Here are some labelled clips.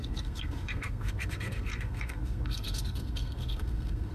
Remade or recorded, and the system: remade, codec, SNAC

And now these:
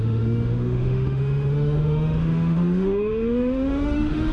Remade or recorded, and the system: remade, autoencoder, DAC-VAE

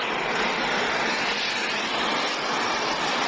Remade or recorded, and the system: recorded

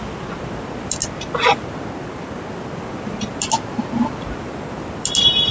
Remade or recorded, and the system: recorded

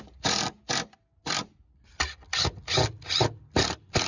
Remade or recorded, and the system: recorded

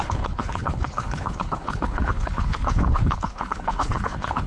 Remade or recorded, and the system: remade, codec, HILCodec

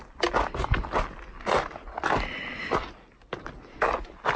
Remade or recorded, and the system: recorded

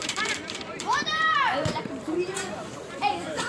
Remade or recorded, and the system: remade, vocoder, BigVGAN v2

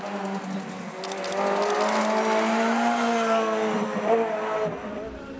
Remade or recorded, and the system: recorded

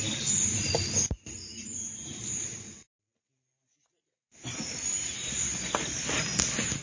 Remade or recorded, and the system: recorded